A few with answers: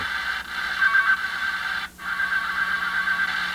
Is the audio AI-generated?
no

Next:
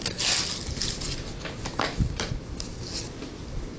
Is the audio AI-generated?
no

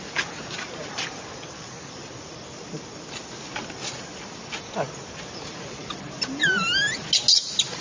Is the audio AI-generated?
no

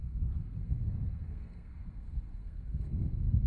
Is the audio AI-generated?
yes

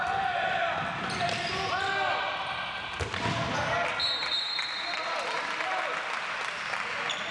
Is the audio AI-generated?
no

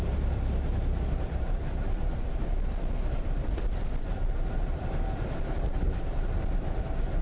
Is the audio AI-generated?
no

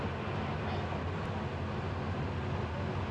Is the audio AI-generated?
no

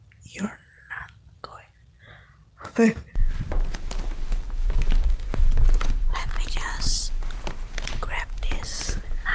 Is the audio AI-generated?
no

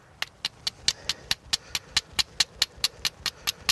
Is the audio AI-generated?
no